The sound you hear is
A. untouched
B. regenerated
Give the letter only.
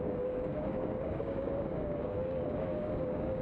B